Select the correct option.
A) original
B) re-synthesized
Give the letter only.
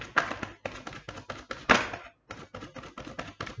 A